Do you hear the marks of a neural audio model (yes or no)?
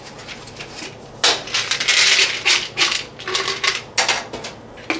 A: no